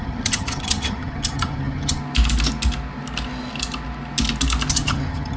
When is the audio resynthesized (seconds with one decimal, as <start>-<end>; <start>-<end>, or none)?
0.0-2.0; 4.7-5.4